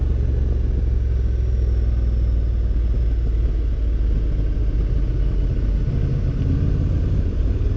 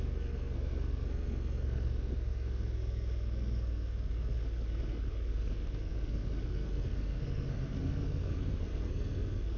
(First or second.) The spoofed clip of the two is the second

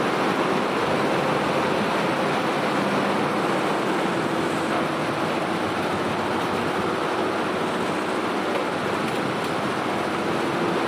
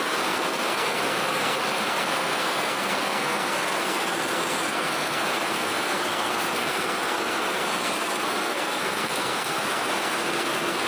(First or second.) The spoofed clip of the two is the second